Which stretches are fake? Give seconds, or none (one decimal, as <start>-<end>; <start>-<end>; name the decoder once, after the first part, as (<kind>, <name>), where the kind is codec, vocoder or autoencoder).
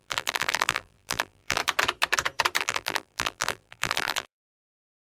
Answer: 0.0-1.6 (vocoder, BigVGAN v2); 2.6-5.1